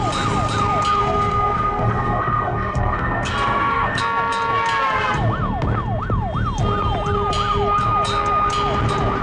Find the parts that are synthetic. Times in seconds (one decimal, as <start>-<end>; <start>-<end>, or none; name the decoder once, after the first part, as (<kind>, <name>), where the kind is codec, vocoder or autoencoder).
1.0-4.0 (codec, SNAC)